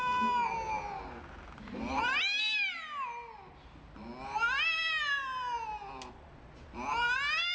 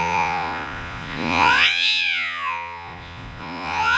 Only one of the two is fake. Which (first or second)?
second